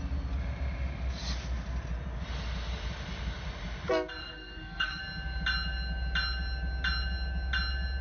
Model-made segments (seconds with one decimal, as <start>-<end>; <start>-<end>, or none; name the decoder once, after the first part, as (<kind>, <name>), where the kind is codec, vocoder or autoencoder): 4.2-5.0 (codec, SNAC)